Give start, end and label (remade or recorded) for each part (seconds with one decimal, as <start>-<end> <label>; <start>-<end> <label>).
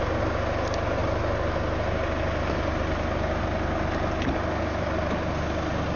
0.0-6.0 recorded